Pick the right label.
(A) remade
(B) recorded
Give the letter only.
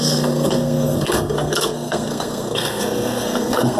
A